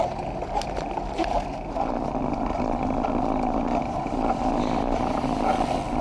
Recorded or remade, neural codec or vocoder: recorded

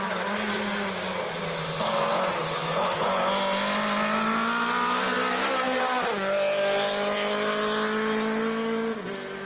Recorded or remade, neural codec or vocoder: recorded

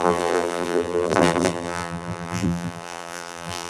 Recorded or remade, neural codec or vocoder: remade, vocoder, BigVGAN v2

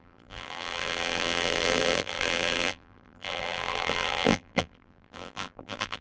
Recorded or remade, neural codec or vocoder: remade, vocoder, BigVGAN v2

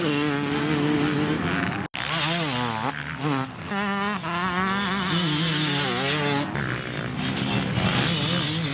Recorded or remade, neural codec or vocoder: recorded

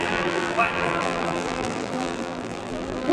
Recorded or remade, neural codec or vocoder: remade, vocoder, BigVGAN v2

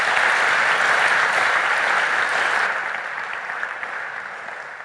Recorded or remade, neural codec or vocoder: remade, vocoder, BigVGAN v2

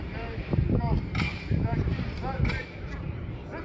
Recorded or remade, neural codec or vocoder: recorded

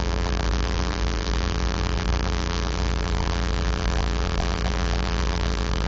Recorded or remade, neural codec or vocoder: remade, vocoder, BigVGAN v2